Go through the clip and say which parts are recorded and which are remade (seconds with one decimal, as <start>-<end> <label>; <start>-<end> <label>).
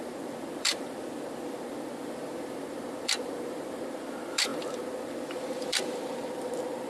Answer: 0.0-6.9 remade